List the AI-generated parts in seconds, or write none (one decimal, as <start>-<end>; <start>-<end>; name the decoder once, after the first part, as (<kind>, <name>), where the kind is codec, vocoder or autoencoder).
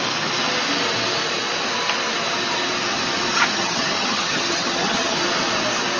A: 3.5-5.2 (vocoder, HiFi-GAN)